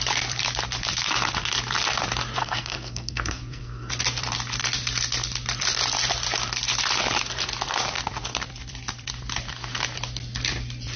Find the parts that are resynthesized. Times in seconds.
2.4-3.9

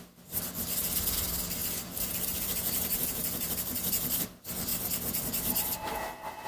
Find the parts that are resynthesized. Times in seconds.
1.6-4.2

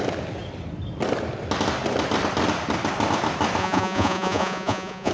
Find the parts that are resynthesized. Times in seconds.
3.6-5.1

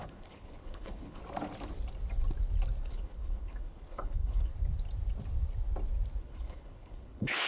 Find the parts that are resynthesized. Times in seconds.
0.0-1.2; 2.8-4.5; 6.2-7.5

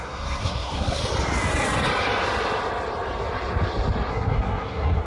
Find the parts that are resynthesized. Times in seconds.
0.0-1.0; 4.1-5.1

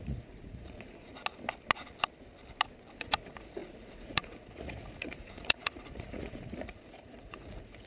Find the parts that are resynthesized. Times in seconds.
0.0-1.1; 3.0-7.9

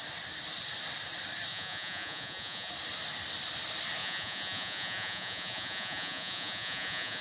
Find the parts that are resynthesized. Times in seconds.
1.5-2.7; 4.0-7.2